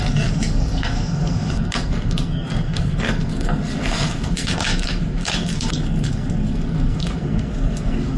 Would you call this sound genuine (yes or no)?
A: no